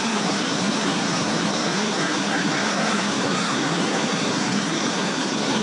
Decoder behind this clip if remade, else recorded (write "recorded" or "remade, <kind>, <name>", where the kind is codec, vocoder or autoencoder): remade, codec, SNAC